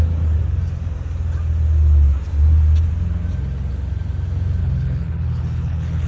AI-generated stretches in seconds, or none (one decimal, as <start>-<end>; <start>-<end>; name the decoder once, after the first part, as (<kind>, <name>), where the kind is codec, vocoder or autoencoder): 4.6-6.1 (codec, HILCodec)